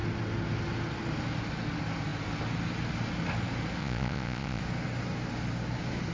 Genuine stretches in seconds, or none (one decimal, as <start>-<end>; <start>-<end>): 0.0-3.8; 4.6-6.1